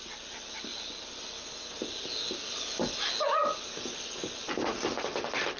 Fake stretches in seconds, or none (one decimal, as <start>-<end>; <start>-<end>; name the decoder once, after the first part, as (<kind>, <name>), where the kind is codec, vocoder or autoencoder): none